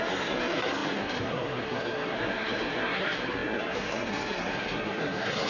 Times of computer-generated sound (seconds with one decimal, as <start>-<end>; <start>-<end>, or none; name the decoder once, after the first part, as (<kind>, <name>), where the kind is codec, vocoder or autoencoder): 0.0-5.5 (codec, SNAC)